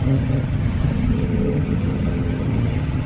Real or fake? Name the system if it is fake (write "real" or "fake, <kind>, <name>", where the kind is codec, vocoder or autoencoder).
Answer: fake, vocoder, HiFi-GAN